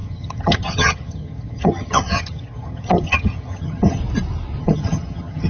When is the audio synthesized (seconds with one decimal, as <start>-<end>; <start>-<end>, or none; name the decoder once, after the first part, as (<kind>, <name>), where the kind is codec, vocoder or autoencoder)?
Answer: 0.0-4.0 (vocoder, HiFi-GAN); 4.6-5.5